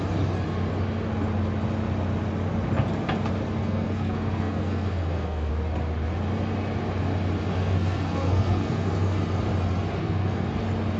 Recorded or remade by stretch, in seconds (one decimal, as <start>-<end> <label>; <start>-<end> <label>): 0.0-3.6 recorded; 3.6-5.5 remade; 5.5-7.5 recorded; 7.5-9.2 remade; 9.2-10.0 recorded; 10.0-10.6 remade; 10.6-11.0 recorded